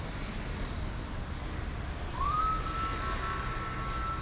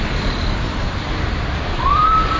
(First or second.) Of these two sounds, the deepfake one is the second